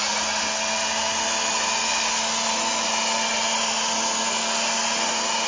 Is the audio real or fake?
real